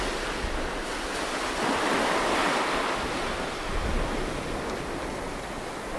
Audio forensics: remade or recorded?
recorded